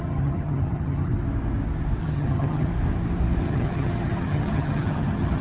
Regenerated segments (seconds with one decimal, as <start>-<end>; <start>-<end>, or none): 0.0-1.1; 2.0-2.7; 3.4-5.4